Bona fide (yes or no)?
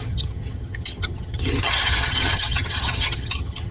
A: no